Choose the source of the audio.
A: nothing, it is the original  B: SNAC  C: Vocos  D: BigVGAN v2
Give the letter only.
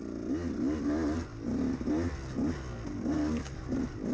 A